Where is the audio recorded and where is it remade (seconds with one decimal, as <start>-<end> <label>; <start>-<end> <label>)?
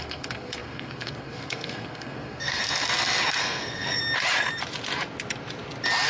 0.0-2.6 remade; 2.6-3.4 recorded; 3.4-4.0 remade; 4.0-6.1 recorded